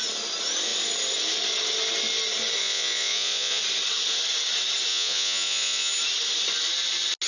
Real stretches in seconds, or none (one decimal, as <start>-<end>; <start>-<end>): 0.0-2.6; 3.6-4.9; 5.9-7.3